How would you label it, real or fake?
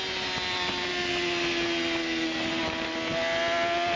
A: real